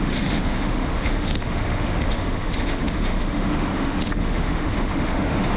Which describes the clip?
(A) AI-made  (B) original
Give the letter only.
A